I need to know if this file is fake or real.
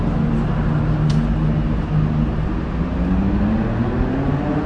real